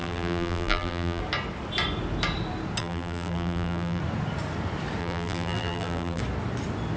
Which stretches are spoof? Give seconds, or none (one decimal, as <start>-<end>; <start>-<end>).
0.0-1.2; 2.8-4.0; 5.0-6.2